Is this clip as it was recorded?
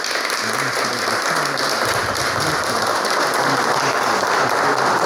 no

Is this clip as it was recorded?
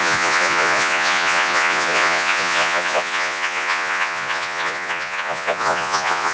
no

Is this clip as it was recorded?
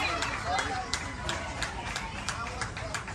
no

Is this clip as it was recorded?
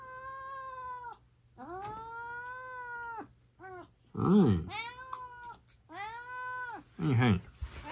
yes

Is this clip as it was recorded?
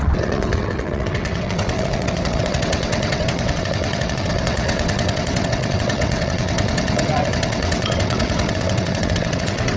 no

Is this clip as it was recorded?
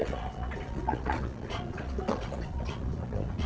no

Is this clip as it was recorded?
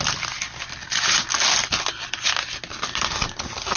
yes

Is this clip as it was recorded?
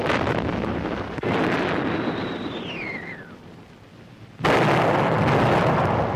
yes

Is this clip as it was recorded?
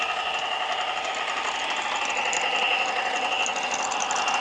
yes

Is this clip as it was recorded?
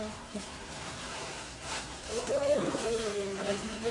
no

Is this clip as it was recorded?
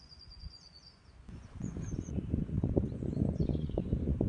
no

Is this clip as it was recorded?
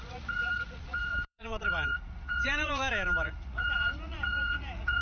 no